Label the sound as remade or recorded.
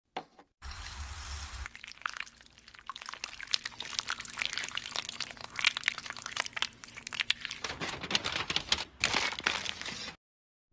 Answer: recorded